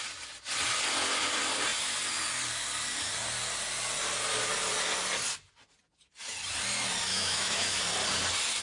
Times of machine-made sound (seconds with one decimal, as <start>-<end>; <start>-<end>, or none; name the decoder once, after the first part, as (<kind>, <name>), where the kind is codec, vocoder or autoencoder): 7.1-7.8 (autoencoder, DAC-VAE)